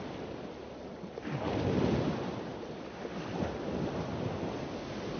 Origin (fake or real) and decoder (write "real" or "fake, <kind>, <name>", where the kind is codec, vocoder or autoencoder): real